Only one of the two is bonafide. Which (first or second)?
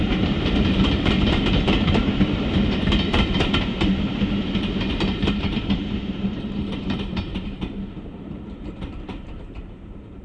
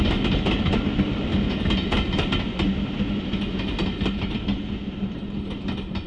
second